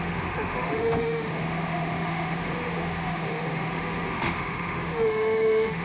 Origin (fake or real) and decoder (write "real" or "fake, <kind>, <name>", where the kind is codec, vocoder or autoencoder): fake, autoencoder, DAC-VAE